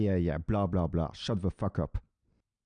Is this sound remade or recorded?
recorded